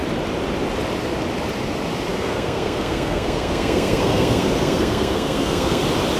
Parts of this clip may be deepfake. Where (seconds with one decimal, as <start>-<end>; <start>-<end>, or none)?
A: 2.1-5.8